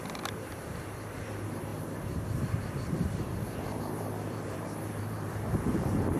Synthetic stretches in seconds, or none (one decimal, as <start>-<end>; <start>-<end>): 0.0-6.2